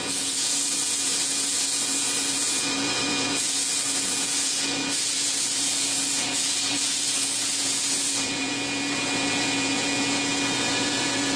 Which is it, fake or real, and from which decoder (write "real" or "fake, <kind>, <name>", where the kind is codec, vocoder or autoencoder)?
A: fake, vocoder, Vocos